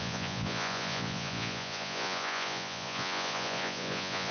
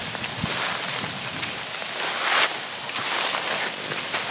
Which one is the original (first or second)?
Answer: second